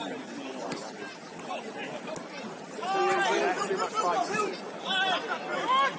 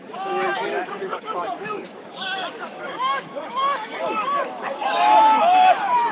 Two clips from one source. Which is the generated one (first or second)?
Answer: second